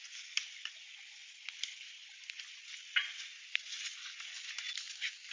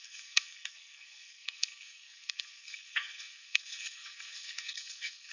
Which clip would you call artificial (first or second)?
second